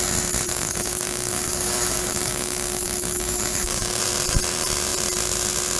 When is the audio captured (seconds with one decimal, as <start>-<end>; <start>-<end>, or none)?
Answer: 0.0-0.5; 4.0-5.8